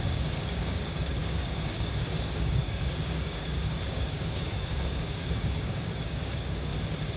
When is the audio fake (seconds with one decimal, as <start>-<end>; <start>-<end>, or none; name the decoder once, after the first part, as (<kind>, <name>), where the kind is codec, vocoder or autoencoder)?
0.0-6.7 (codec, DAC)